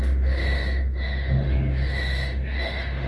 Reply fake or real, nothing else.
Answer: fake